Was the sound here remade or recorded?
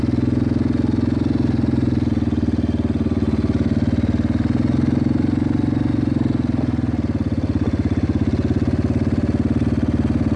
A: recorded